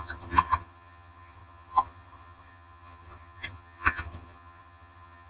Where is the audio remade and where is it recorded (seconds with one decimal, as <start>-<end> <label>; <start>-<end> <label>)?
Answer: 0.0-5.3 remade